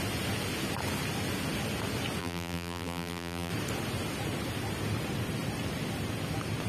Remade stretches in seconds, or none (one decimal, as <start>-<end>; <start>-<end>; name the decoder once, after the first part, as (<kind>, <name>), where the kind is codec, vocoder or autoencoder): 2.2-3.5 (vocoder, BigVGAN v2)